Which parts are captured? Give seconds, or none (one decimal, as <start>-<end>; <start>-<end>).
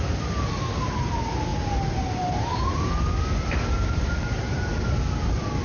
0.0-5.6